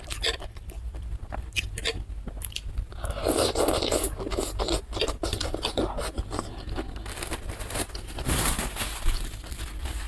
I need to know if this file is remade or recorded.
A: recorded